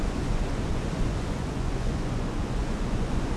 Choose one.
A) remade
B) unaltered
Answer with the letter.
A